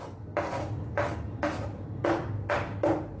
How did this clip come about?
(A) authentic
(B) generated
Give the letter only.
A